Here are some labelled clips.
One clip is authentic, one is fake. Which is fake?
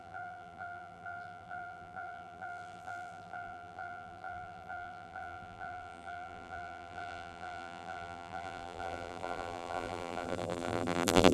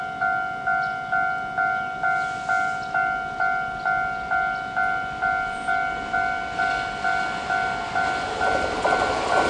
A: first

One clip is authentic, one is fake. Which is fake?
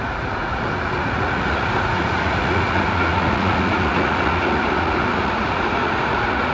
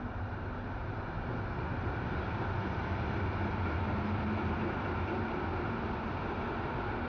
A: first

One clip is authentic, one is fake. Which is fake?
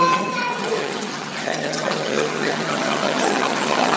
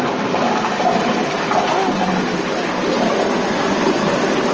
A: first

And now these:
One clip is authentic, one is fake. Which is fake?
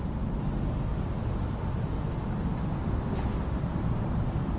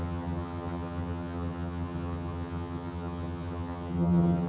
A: second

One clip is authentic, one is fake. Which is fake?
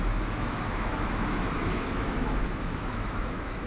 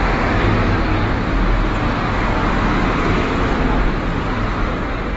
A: first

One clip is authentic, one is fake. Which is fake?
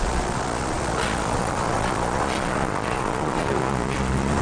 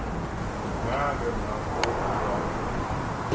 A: first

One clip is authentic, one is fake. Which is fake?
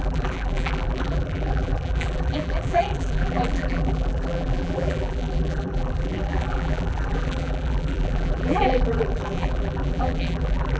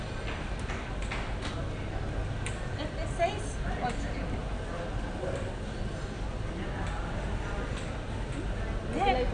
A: first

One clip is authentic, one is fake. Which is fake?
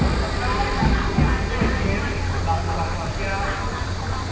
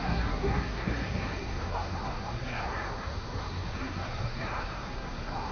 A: second